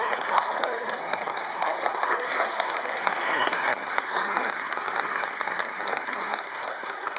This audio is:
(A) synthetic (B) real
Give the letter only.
A